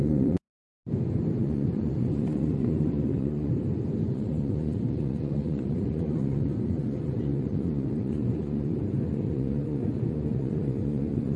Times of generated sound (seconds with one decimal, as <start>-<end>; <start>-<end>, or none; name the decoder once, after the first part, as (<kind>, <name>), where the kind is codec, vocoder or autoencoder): 0.0-0.5 (vocoder, Vocos); 1.4-3.5; 4.1-11.4